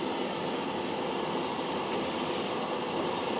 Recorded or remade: recorded